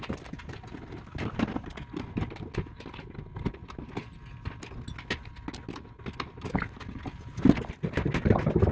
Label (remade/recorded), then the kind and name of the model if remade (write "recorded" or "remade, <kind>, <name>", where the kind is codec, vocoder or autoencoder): recorded